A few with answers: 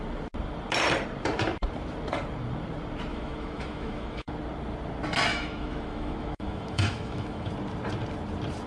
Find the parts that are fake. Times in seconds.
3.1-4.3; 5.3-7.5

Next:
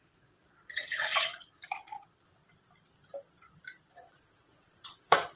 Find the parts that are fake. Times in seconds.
0.0-2.4; 3.9-5.4

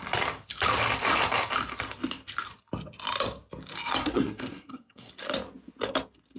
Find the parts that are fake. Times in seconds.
4.0-5.1

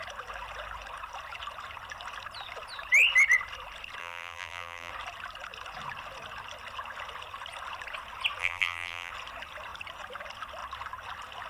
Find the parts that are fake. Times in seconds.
4.0-4.9; 8.4-9.1